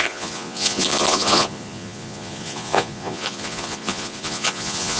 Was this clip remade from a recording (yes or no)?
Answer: yes